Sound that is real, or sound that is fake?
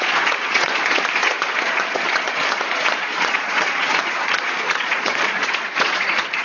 fake